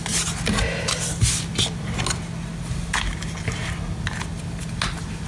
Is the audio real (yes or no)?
yes